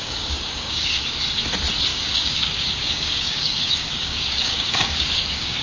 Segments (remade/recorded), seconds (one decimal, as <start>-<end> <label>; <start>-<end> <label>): 0.0-1.0 remade; 1.0-1.9 recorded; 1.9-5.6 remade